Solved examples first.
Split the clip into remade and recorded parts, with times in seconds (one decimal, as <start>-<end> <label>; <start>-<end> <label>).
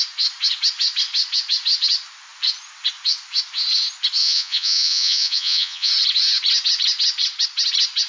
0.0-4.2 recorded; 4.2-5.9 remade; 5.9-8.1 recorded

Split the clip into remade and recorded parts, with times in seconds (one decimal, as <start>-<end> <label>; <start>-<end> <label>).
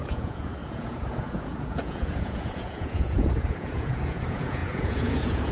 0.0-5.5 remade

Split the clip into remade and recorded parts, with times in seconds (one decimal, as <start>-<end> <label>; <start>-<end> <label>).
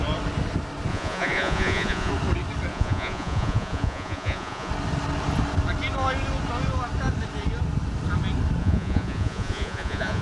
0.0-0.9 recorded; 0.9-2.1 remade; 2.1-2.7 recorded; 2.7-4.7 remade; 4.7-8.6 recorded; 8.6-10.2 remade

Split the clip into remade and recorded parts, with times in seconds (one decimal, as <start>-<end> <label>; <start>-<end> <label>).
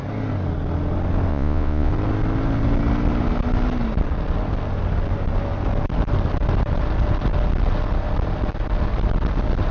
0.0-1.3 recorded; 1.3-1.9 remade; 1.9-9.7 recorded